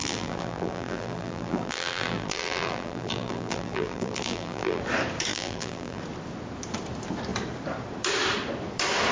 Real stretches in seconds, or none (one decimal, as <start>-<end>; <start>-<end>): 4.8-5.3; 6.0-9.1